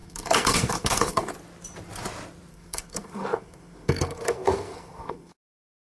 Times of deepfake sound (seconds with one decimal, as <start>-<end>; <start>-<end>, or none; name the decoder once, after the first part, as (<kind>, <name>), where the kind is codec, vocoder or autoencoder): 0.0-1.3 (codec, SNAC); 2.5-5.9